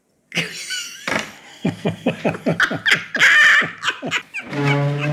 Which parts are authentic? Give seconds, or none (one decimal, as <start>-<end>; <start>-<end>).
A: 0.0-1.5; 2.1-5.1